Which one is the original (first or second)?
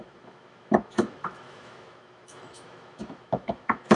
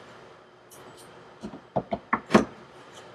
second